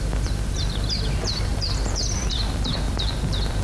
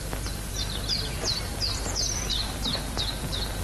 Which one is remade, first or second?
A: first